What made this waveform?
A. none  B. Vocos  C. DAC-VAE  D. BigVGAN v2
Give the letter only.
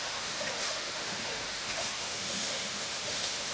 C